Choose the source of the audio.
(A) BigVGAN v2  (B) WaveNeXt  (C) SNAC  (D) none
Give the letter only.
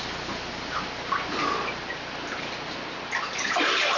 D